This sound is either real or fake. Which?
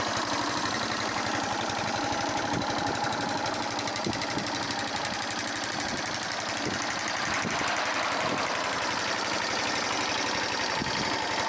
real